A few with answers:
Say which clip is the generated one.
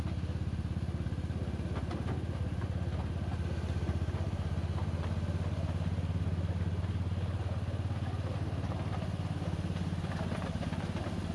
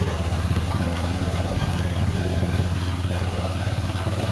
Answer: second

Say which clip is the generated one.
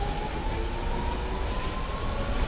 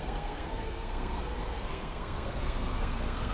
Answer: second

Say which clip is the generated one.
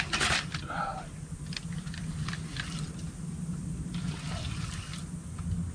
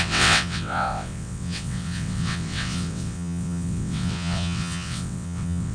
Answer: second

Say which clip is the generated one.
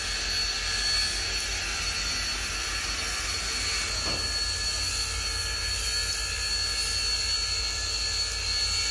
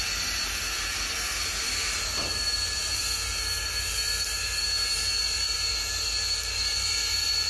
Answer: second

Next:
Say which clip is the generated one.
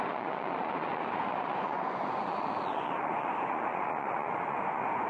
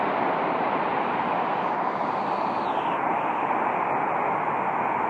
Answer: first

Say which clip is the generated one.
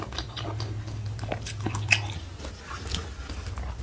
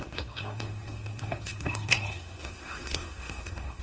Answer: second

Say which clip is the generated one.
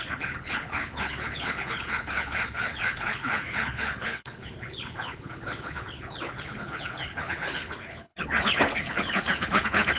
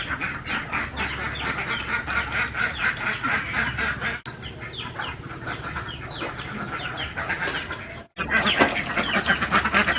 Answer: first